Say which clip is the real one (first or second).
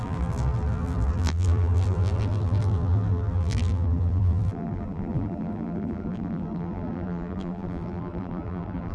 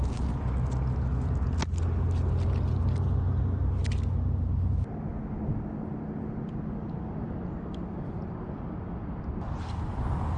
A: second